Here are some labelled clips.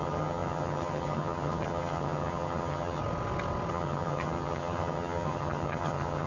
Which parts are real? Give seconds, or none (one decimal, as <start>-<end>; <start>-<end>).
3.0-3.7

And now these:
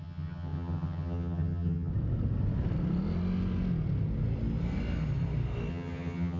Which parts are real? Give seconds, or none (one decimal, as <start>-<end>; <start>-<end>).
1.9-5.7

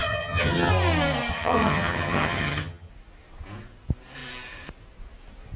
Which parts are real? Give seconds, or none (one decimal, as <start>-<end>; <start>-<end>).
0.7-1.3; 2.9-5.6